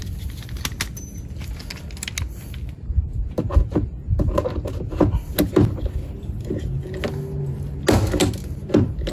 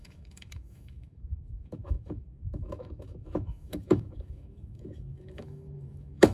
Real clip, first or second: first